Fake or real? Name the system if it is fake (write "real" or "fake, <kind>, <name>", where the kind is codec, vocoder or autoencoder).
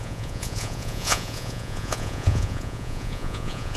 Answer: fake, vocoder, Vocos